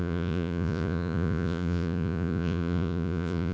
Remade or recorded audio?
remade